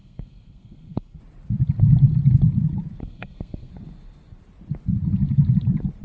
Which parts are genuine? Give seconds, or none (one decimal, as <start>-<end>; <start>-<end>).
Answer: 1.2-3.0; 3.7-6.0